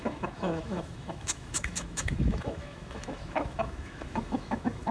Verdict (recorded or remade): remade